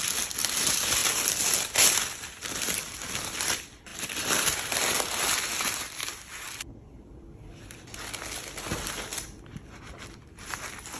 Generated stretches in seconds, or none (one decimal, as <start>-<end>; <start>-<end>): none